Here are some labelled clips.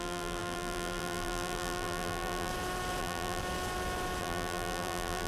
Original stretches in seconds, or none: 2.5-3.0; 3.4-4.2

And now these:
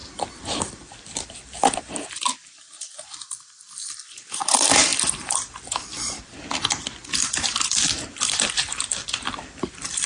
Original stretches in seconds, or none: none